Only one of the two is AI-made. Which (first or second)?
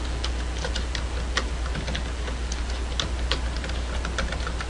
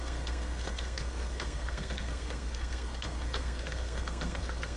second